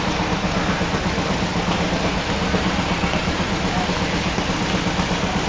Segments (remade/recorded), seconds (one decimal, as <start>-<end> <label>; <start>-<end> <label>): 0.0-1.5 remade; 1.5-4.4 recorded; 4.4-5.5 remade